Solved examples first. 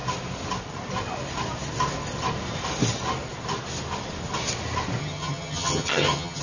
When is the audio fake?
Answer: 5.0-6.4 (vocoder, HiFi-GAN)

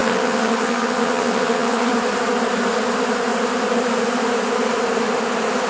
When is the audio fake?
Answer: 0.0-1.9 (vocoder, HiFi-GAN)

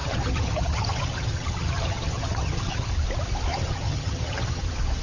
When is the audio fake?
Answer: 0.0-2.9 (vocoder, HiFi-GAN); 3.5-4.6

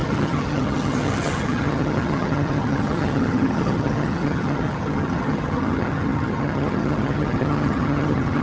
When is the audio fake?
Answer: 0.0-8.4 (vocoder, HiFi-GAN)